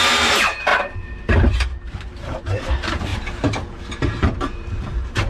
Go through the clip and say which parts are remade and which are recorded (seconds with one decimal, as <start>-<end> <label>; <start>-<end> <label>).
0.0-5.3 remade